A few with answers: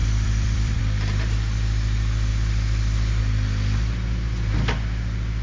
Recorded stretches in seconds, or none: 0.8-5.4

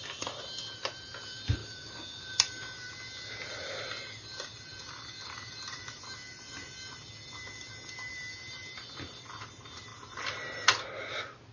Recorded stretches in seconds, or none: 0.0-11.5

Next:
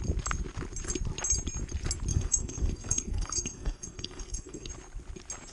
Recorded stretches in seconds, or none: 0.0-2.1; 4.7-5.5

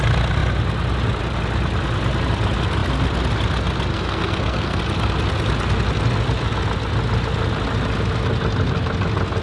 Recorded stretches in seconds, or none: 0.0-3.9; 4.8-9.4